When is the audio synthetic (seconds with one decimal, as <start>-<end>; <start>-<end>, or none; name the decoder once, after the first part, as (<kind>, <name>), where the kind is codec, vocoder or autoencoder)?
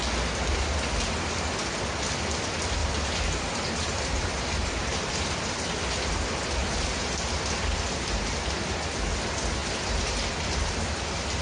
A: 2.8-5.1 (vocoder, BigVGAN v2); 6.6-7.2